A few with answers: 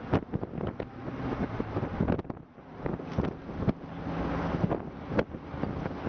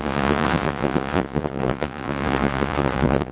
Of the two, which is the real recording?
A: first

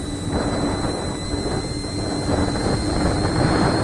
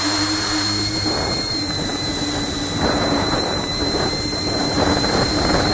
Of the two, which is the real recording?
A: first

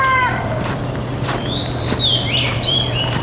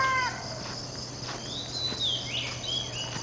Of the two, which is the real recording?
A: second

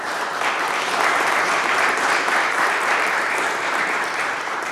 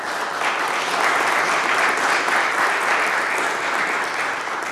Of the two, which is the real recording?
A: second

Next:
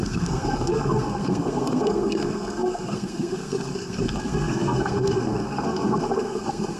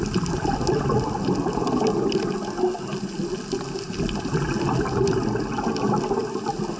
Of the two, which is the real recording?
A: second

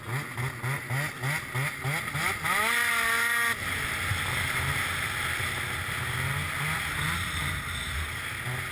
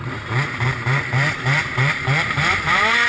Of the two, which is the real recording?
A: first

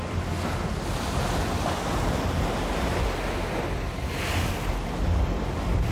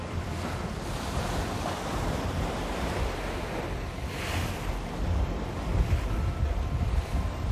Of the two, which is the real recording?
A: first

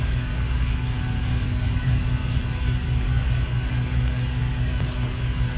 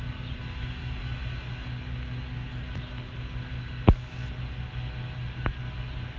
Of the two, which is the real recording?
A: second